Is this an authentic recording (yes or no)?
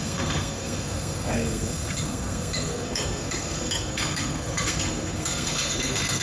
no